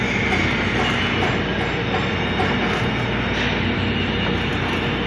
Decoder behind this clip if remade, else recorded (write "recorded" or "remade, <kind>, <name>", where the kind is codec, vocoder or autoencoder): recorded